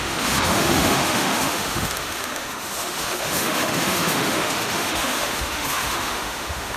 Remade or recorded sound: remade